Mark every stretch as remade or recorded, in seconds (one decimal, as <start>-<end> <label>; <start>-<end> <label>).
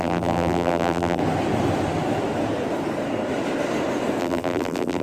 0.0-1.2 remade; 1.2-4.2 recorded; 4.2-5.0 remade